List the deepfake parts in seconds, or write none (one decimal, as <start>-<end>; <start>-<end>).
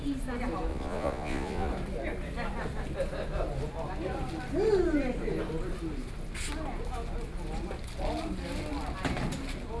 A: 0.7-1.7